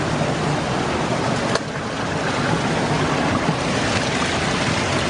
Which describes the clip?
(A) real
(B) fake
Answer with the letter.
A